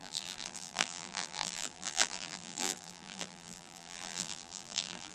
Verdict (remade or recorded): remade